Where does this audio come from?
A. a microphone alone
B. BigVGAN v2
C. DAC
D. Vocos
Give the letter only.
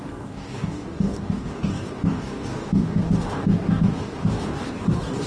C